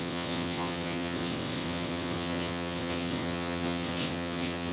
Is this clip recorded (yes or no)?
no